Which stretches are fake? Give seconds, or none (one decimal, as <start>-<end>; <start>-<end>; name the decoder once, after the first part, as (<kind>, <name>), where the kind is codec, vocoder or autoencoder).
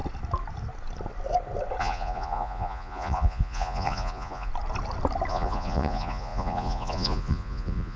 1.8-4.5 (vocoder, Vocos); 5.3-8.0